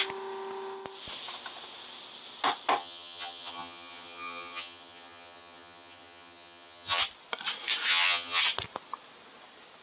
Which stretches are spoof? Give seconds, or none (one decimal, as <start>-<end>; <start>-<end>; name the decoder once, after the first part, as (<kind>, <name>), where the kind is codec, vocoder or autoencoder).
2.8-7.0 (vocoder, HiFi-GAN); 7.9-8.4

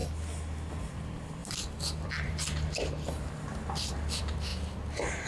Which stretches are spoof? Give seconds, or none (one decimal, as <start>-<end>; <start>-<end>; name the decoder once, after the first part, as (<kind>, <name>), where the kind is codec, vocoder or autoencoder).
0.7-4.5 (vocoder, BigVGAN v2)

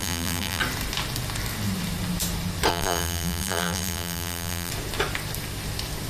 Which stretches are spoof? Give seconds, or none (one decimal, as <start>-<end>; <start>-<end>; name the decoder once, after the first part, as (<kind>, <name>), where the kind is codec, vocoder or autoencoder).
0.0-0.6 (vocoder, BigVGAN v2); 2.7-4.7

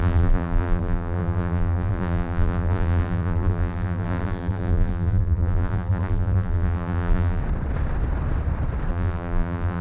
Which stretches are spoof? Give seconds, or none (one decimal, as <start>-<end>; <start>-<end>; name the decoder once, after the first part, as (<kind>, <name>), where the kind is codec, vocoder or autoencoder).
0.0-7.4 (vocoder, BigVGAN v2); 8.9-9.8

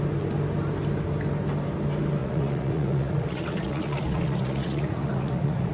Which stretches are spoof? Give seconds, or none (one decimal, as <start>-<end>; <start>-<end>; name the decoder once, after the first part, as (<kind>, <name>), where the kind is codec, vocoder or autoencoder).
2.2-5.7 (vocoder, Vocos)

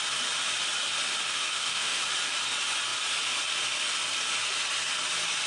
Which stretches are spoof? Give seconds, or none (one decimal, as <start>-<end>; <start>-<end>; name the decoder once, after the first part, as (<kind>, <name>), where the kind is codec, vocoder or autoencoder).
1.3-2.0 (autoencoder, DAC-VAE)

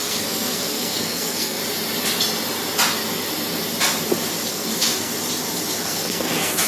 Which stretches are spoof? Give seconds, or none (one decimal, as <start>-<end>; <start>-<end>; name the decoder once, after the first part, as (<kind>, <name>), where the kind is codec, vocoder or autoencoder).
0.0-1.6 (codec, SNAC); 4.5-5.1; 5.8-6.7

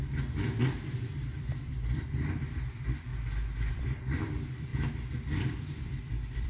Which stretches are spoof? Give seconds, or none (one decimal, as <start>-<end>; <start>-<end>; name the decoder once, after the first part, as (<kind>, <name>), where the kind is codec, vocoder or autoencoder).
0.6-3.1 (vocoder, BigVGAN v2); 3.7-4.7; 5.8-6.5